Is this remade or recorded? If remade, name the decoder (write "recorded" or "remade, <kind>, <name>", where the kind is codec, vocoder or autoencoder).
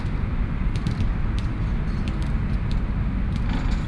recorded